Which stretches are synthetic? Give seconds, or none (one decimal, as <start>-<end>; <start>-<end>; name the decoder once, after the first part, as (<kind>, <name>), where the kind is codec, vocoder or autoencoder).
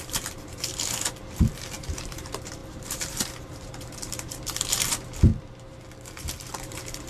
0.0-0.7 (vocoder, BigVGAN v2); 1.5-5.3; 6.6-7.1